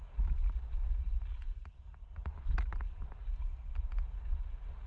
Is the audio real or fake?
real